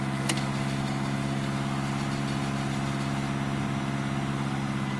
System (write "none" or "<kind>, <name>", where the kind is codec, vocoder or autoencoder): none